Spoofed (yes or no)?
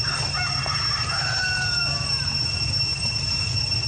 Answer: no